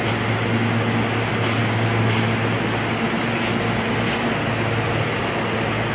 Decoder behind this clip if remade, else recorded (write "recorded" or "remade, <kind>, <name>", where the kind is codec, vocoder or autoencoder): recorded